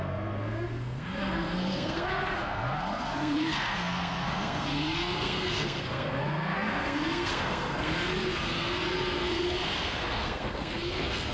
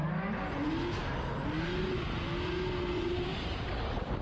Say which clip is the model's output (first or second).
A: first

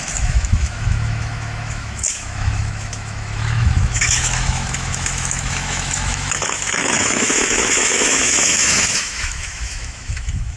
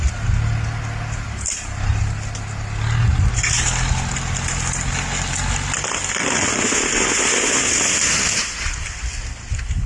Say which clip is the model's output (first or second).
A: first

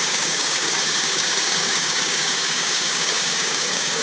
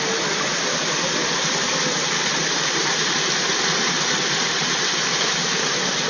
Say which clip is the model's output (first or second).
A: first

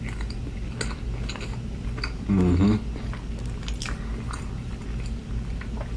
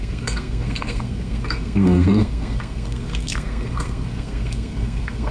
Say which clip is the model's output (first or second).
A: second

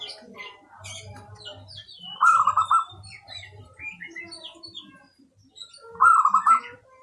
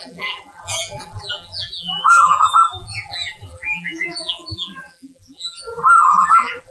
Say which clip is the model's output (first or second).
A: second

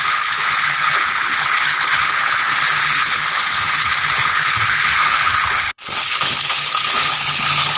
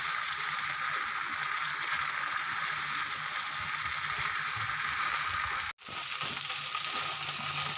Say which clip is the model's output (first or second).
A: first